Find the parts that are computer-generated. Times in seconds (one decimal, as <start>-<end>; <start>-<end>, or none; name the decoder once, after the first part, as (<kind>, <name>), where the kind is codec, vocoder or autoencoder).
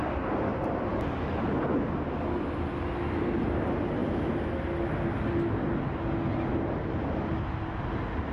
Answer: none